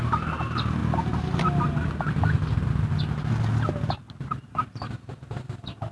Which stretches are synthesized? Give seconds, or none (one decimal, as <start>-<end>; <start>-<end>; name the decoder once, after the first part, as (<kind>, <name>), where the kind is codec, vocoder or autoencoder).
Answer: none